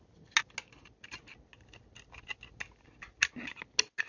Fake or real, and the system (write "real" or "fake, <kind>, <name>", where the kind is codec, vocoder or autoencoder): real